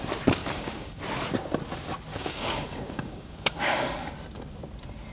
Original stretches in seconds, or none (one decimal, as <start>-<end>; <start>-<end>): 0.0-0.4; 1.0-2.1; 4.1-5.1